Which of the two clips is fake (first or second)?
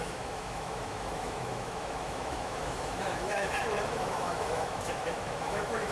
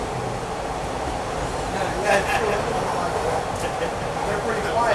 first